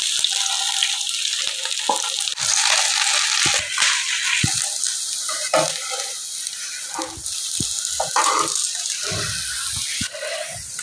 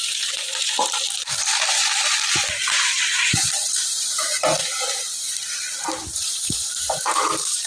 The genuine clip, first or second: first